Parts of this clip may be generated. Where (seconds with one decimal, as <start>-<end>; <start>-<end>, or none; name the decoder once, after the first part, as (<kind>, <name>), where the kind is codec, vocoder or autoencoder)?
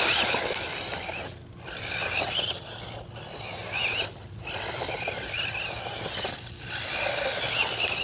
none